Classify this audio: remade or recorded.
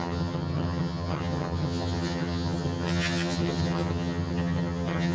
remade